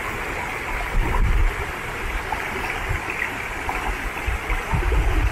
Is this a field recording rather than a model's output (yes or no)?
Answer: yes